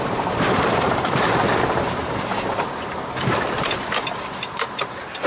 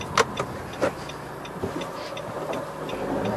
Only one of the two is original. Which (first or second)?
second